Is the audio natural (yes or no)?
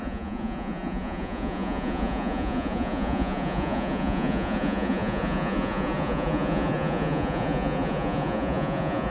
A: no